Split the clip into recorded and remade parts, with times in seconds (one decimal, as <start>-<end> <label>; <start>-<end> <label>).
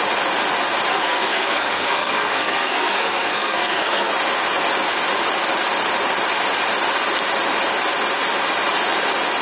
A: 0.0-0.9 recorded; 0.9-4.1 remade; 4.1-9.4 recorded